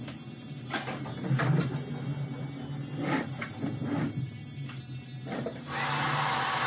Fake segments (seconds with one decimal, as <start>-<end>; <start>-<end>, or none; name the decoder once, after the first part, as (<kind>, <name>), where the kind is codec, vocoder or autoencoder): none